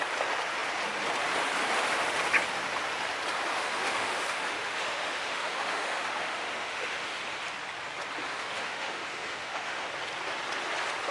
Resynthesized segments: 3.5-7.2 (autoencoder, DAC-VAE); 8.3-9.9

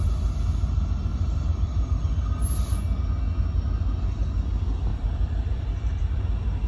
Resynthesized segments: 1.1-2.1 (vocoder, BigVGAN v2); 4.9-6.2

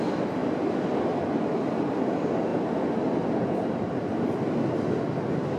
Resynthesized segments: none